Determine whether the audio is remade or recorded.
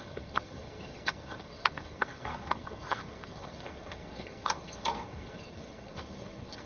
remade